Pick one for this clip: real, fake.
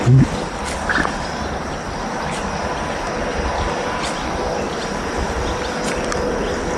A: real